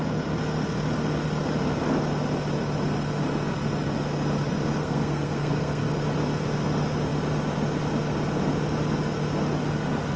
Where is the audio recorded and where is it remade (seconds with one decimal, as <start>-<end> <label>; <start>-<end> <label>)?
0.0-4.8 recorded; 4.8-5.8 remade; 5.8-10.2 recorded